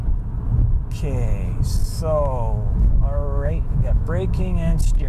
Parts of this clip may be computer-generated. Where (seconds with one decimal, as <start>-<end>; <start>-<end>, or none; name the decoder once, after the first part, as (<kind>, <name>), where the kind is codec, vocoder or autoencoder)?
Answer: 1.8-5.1 (autoencoder, DAC-VAE)